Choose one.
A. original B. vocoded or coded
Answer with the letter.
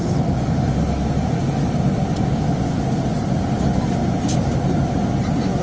A